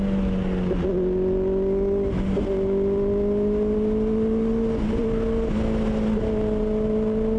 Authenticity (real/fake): real